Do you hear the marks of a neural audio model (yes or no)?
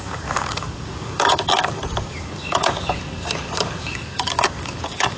yes